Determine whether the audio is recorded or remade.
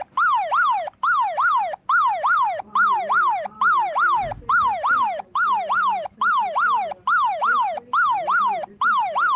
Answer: recorded